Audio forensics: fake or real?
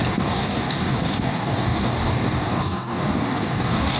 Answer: fake